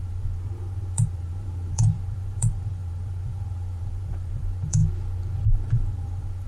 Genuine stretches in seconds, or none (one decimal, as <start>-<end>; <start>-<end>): 4.8-5.5